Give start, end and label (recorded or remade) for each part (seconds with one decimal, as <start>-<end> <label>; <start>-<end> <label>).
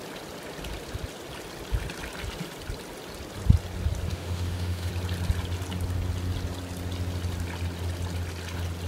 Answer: 0.0-4.1 recorded; 4.1-4.9 remade; 4.9-8.9 recorded